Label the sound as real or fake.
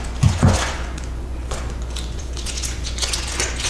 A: fake